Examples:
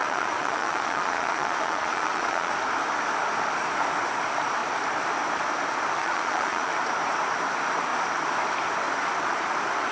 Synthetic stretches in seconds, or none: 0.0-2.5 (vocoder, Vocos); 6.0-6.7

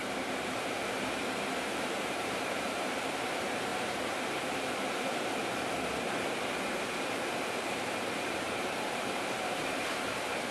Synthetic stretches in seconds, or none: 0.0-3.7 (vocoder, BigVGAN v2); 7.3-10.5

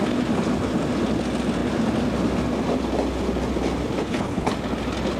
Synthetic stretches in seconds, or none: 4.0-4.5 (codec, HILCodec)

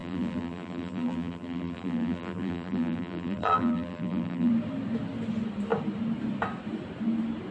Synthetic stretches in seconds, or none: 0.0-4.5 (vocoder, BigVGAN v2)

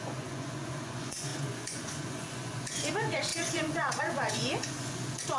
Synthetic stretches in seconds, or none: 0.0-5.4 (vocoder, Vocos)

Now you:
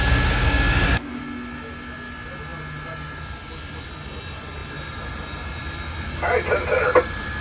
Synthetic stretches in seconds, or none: 0.0-1.2 (codec, DAC)

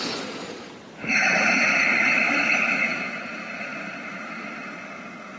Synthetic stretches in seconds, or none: 0.0-0.4 (vocoder, Vocos); 1.1-1.7; 2.8-3.7; 4.9-5.4

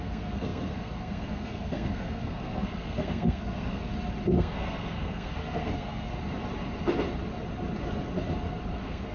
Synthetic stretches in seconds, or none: 0.0-3.9 (codec, SNAC); 4.4-6.1; 8.7-9.1